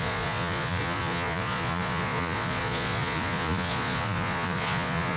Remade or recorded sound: remade